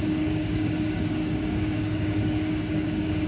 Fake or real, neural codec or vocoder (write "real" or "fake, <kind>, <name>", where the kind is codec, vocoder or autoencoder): fake, codec, DAC